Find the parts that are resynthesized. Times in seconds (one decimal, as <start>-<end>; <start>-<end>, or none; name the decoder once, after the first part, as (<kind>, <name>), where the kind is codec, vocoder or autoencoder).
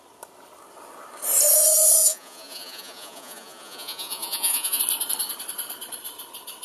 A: 2.0-4.8 (vocoder, Vocos)